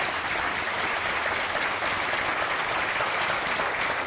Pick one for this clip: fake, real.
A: real